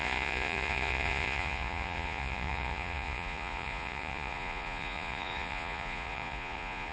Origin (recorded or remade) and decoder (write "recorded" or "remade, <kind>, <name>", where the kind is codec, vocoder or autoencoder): remade, vocoder, Vocos